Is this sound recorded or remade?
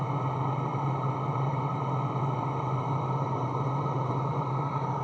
recorded